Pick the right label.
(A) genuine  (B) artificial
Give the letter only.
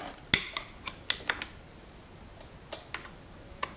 A